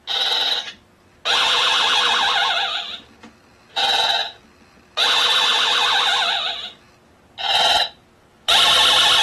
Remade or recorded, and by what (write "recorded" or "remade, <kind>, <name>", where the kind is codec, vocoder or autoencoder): recorded